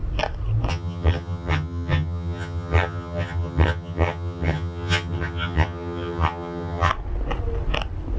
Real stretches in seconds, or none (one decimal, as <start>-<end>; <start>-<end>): 0.0-0.7; 6.9-8.2